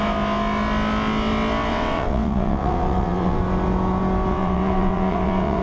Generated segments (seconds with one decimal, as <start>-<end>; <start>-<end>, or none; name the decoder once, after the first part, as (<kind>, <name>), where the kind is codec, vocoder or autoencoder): 1.7-3.4 (vocoder, WaveNeXt); 4.3-5.6